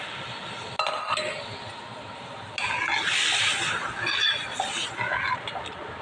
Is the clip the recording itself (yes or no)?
yes